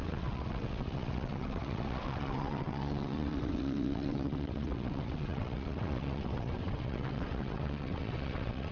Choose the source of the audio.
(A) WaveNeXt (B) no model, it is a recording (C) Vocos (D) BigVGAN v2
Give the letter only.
A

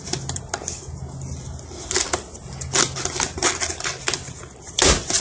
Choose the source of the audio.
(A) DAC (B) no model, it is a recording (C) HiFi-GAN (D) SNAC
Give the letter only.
B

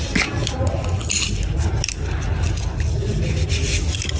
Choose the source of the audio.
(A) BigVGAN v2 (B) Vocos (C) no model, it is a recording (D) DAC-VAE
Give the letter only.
C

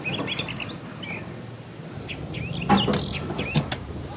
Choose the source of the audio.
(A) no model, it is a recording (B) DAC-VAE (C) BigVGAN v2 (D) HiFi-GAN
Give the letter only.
A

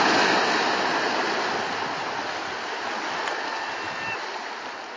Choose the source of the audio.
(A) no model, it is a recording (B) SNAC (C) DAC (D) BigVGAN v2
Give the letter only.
A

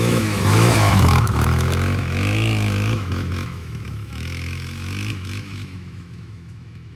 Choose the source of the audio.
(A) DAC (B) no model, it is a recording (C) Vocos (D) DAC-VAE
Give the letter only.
D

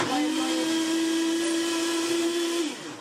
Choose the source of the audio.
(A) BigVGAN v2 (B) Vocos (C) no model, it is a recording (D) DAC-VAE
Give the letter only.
C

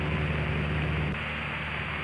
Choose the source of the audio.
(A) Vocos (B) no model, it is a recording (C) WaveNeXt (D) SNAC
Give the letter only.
B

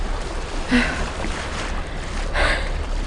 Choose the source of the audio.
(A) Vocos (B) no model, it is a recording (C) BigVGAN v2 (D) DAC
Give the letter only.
C